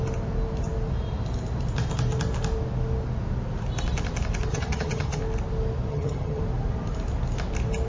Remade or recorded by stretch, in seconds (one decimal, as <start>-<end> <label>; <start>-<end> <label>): 0.0-4.5 recorded; 4.5-5.2 remade; 5.2-5.9 recorded; 5.9-6.4 remade; 6.4-7.9 recorded